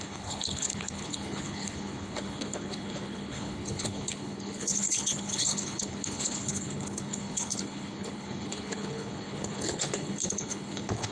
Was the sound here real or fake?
fake